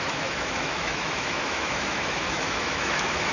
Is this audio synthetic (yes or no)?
yes